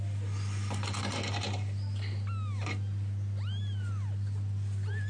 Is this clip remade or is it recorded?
recorded